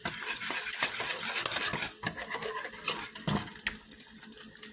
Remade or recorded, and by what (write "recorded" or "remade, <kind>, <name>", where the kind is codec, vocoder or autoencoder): recorded